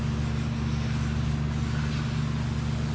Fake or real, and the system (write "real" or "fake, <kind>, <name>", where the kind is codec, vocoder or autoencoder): real